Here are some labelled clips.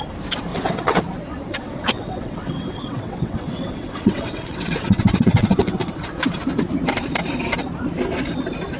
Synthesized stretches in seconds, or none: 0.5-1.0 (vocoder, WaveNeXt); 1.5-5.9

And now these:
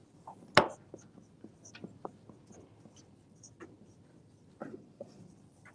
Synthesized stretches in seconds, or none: 4.6-5.2 (vocoder, Vocos)

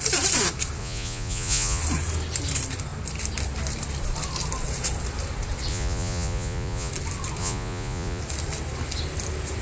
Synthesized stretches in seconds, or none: 0.8-1.8 (vocoder, Vocos); 5.7-6.9; 7.4-8.2

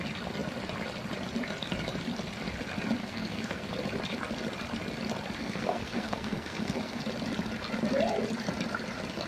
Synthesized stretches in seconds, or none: 3.0-3.7 (codec, SNAC); 5.4-7.0

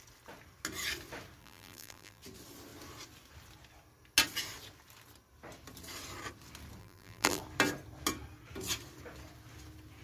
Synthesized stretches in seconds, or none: 1.4-2.2 (vocoder, BigVGAN v2); 6.8-7.4